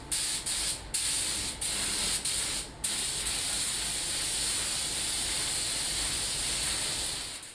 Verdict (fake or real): real